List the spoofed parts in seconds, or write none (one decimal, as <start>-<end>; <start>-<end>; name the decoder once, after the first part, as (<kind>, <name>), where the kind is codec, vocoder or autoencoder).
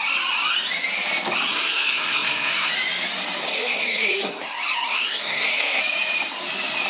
1.5-2.7 (codec, SNAC); 3.4-4.4; 4.9-5.8